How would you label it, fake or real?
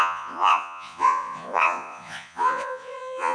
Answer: fake